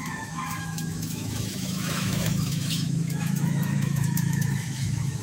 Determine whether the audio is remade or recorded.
remade